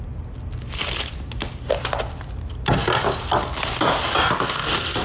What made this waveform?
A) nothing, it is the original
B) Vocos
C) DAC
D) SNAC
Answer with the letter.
A